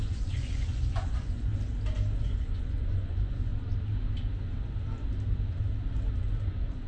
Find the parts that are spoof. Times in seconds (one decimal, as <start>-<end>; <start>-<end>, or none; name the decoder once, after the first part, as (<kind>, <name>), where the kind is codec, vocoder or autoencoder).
0.0-1.5 (vocoder, Vocos); 2.2-3.5; 6.4-6.9